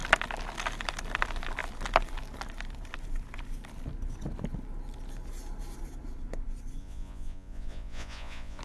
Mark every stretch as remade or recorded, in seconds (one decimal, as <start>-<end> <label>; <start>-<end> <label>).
0.0-6.8 recorded; 6.8-8.6 remade